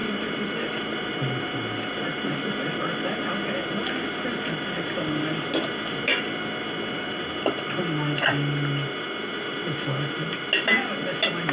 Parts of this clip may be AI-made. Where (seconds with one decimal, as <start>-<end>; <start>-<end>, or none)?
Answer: none